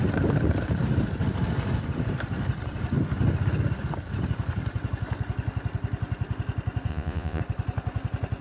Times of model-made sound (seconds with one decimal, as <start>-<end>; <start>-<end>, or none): 6.9-7.4